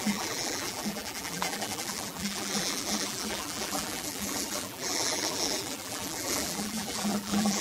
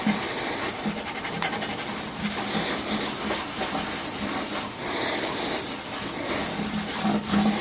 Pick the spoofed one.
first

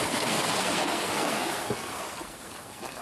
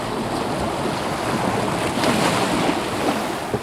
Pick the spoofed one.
first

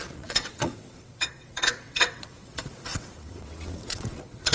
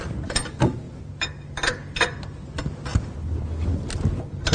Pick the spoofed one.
first